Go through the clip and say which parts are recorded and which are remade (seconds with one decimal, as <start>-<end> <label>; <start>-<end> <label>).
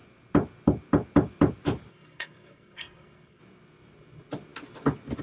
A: 0.0-1.9 recorded; 1.9-3.4 remade; 3.4-5.2 recorded